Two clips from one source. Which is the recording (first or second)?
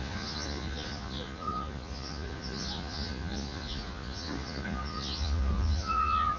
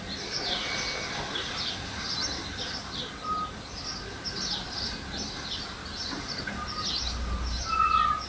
second